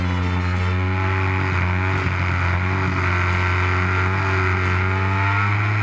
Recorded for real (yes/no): yes